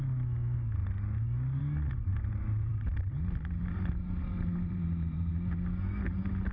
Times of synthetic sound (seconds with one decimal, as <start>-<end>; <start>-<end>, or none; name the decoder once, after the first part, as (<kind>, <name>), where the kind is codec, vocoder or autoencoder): 2.1-5.3 (vocoder, BigVGAN v2)